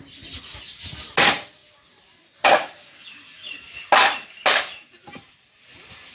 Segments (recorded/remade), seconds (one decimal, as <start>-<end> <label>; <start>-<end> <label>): 0.0-6.1 recorded